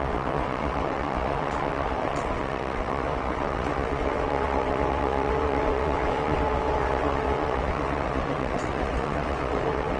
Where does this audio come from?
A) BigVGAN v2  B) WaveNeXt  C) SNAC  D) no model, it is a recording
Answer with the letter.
B